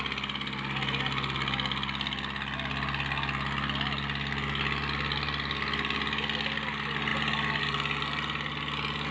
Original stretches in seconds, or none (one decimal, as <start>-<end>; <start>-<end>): 0.0-9.1